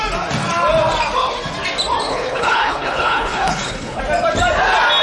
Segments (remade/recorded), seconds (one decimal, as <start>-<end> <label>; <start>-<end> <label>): 0.0-2.1 recorded; 2.1-4.0 remade; 4.0-5.0 recorded